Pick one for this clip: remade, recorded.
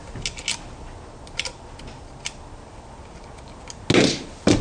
recorded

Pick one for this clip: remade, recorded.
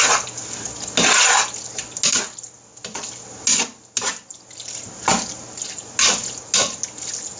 recorded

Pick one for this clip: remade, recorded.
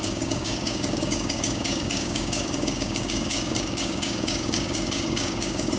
remade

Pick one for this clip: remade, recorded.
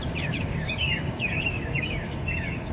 remade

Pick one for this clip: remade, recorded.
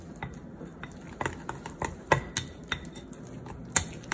recorded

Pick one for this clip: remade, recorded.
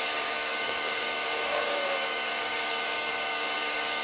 remade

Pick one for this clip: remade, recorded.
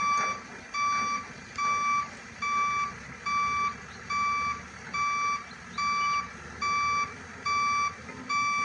recorded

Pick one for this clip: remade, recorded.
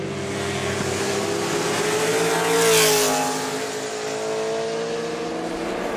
recorded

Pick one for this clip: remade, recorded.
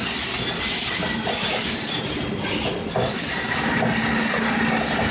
recorded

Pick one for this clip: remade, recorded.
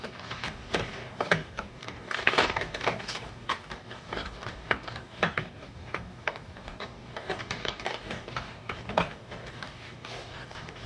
remade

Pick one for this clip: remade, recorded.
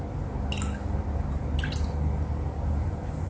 recorded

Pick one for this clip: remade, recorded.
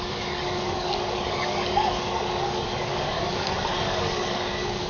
remade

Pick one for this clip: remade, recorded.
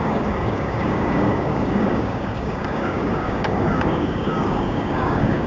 remade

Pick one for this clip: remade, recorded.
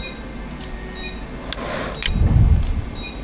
recorded